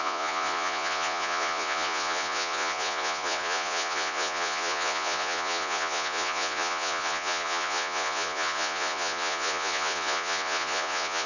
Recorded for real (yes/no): no